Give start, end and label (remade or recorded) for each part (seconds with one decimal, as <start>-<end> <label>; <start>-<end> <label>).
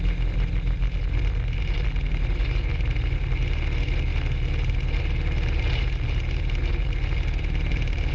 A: 0.0-8.1 recorded